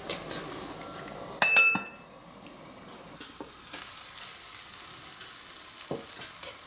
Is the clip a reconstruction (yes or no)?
no